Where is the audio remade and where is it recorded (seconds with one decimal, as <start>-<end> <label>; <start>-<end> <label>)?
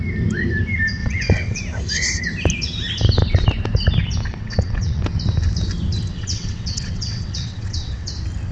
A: 0.0-1.0 recorded; 1.0-1.6 remade; 1.6-4.3 recorded; 4.3-5.0 remade; 5.0-6.1 recorded; 6.1-8.1 remade; 8.1-8.5 recorded